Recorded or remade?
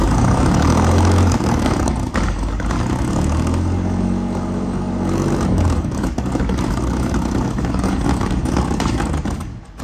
remade